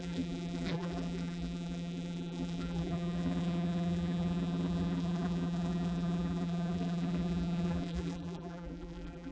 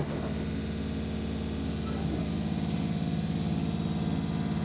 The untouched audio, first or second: second